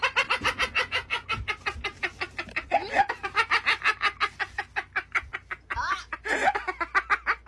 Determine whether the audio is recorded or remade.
recorded